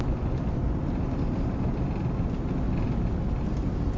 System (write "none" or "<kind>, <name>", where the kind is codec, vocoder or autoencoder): none